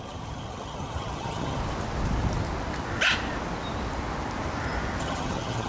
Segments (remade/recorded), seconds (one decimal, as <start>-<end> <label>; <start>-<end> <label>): 0.0-1.6 remade; 1.6-5.0 recorded; 5.0-5.7 remade